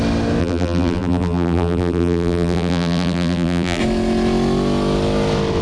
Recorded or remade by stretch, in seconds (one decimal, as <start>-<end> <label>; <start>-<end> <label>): 0.0-0.4 recorded; 0.4-3.8 remade; 3.8-5.6 recorded

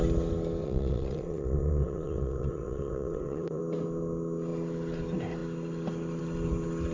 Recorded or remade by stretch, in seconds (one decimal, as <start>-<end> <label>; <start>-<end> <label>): 0.0-0.6 recorded; 0.6-3.6 remade; 3.6-6.9 recorded

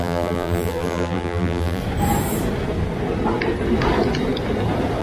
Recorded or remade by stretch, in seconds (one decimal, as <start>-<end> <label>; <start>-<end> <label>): 0.0-1.8 remade; 1.8-5.0 recorded

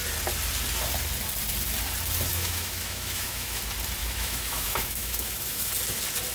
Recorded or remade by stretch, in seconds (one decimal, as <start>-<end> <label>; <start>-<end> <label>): 0.0-2.3 recorded; 2.3-3.6 remade; 3.6-4.0 recorded; 4.0-5.7 remade; 5.7-6.3 recorded